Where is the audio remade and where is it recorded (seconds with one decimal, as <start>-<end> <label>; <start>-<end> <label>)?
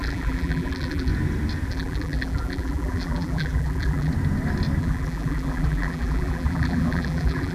0.0-1.1 remade; 1.1-1.7 recorded; 1.7-4.1 remade; 4.1-4.8 recorded; 4.8-7.5 remade